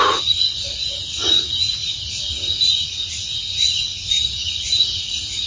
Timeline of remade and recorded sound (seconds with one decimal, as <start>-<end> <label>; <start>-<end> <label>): 0.0-1.8 remade; 1.8-2.6 recorded; 2.6-5.5 remade

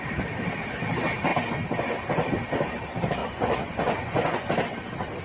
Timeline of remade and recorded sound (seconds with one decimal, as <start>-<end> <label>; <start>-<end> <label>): 0.0-3.2 recorded; 3.2-4.4 remade; 4.4-5.2 recorded

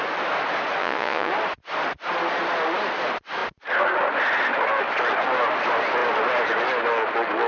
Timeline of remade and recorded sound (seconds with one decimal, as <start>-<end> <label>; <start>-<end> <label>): 0.0-0.8 recorded; 0.8-1.3 remade; 1.3-7.5 recorded